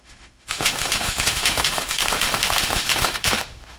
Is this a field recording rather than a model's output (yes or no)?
no